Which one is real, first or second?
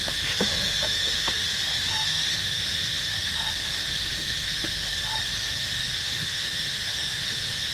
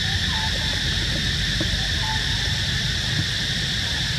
second